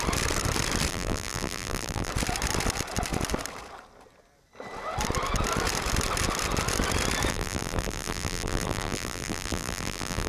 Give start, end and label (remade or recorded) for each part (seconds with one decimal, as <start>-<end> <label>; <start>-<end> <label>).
0.0-0.9 recorded; 0.9-2.1 remade; 2.1-7.3 recorded; 7.3-10.3 remade